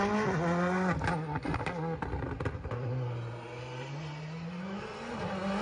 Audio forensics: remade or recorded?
recorded